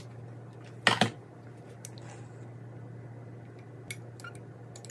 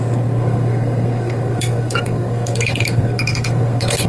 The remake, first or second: second